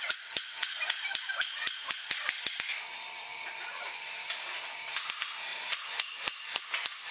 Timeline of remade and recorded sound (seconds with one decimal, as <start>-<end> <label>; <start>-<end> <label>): 0.0-7.1 recorded